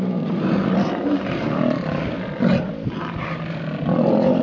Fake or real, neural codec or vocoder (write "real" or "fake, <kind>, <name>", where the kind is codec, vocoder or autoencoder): real